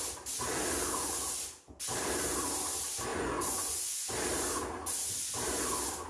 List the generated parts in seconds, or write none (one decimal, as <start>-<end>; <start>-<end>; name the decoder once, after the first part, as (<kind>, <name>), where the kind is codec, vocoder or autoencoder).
3.1-4.1 (vocoder, Vocos)